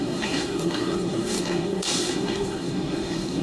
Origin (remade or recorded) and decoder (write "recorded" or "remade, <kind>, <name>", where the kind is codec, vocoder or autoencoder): remade, codec, SNAC